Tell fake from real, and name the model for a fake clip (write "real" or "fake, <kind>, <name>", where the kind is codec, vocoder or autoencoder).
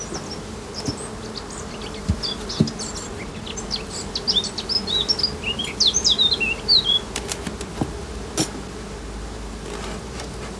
real